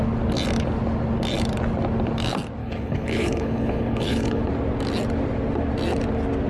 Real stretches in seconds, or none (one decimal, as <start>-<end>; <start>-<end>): 0.0-2.6; 4.4-6.5